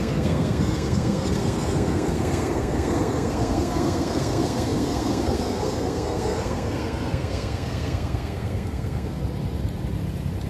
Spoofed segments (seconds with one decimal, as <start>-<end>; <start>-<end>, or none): 0.0-9.2

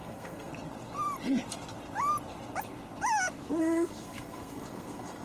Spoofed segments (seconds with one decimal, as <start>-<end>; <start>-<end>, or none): 0.0-0.5; 3.6-5.2